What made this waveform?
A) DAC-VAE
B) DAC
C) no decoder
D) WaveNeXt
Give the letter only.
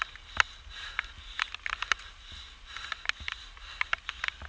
C